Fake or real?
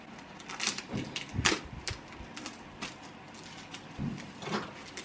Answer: real